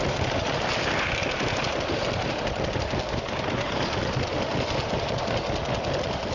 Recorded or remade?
recorded